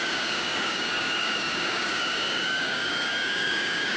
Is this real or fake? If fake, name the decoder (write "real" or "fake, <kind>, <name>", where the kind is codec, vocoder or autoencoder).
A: fake, codec, DAC